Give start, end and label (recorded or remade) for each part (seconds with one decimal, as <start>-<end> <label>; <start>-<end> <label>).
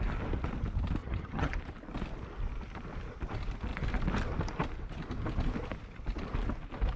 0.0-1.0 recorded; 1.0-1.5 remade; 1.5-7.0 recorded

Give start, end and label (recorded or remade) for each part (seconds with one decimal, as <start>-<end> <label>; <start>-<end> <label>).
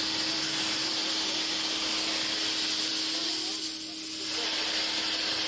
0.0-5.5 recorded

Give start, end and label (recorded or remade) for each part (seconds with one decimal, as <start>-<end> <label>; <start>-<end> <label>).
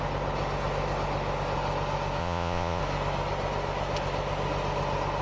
0.0-2.2 recorded; 2.2-2.8 remade; 2.8-5.2 recorded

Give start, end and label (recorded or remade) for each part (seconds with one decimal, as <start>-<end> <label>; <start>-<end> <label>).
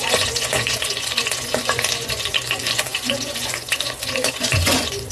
0.0-5.1 remade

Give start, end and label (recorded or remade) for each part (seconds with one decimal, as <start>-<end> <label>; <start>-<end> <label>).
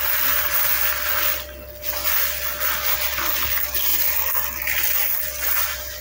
0.0-6.0 recorded